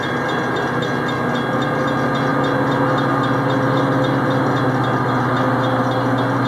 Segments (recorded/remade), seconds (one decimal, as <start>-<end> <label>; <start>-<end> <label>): 0.0-6.5 recorded

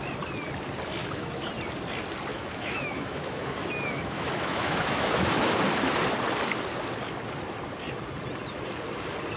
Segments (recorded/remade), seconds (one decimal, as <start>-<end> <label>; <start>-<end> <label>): 0.0-1.0 recorded; 1.0-1.5 remade; 1.5-2.3 recorded; 2.3-5.4 remade; 5.4-9.4 recorded

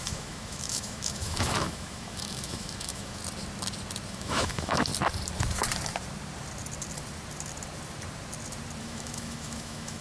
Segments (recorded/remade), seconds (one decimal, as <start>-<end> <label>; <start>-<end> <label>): 0.0-3.2 remade; 3.2-4.1 recorded; 4.1-4.9 remade; 4.9-8.8 recorded; 8.8-10.0 remade

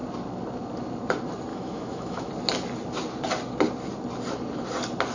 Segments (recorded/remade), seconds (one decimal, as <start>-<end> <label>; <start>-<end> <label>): 0.0-1.5 recorded; 1.5-2.3 remade; 2.3-5.1 recorded

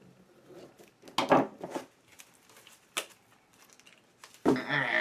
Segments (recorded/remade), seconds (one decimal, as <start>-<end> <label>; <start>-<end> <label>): 0.0-5.0 recorded

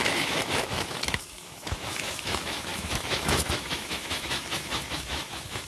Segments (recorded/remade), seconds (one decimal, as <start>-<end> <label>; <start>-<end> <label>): 0.0-5.7 remade

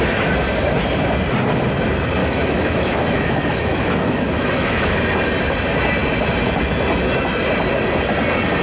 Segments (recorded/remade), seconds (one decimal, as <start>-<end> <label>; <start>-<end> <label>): 0.0-2.2 recorded; 2.2-5.0 remade; 5.0-8.6 recorded